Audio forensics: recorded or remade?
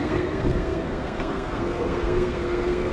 remade